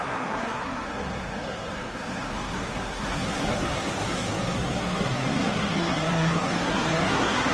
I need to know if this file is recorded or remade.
remade